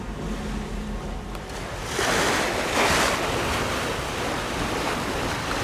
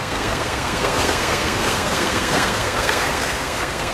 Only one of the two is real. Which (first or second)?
first